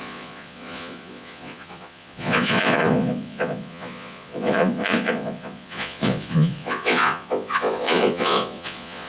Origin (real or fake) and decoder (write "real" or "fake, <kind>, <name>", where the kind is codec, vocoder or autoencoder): fake, vocoder, Vocos